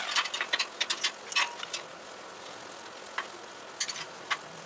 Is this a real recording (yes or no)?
yes